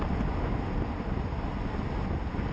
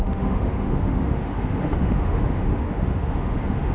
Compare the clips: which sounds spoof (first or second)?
second